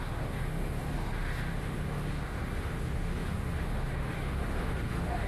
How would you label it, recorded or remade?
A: remade